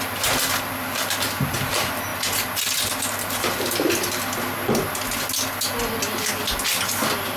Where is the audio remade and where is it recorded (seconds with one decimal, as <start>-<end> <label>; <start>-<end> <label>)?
0.0-7.4 recorded